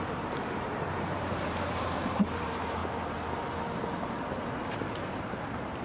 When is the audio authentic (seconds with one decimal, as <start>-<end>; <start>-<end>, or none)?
2.8-4.0